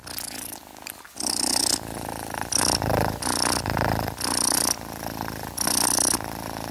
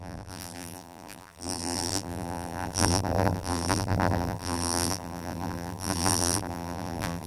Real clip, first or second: first